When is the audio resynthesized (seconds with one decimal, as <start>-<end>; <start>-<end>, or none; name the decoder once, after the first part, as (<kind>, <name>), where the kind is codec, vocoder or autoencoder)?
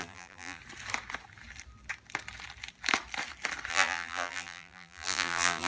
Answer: 0.0-0.6 (vocoder, BigVGAN v2); 3.7-5.7